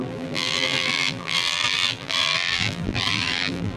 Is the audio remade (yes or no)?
yes